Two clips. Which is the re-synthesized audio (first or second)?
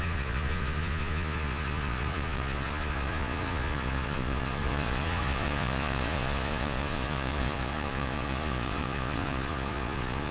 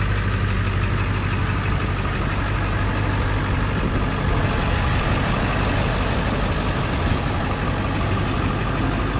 first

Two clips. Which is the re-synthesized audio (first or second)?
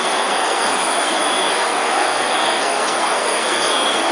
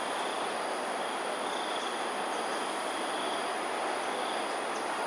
first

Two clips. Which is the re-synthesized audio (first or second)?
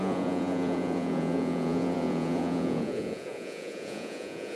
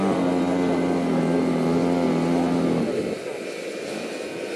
first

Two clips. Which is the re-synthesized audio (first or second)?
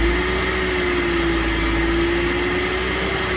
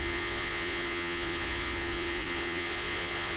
second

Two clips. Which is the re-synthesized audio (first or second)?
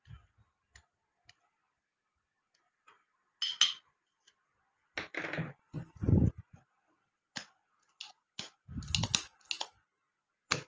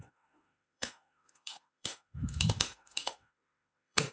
second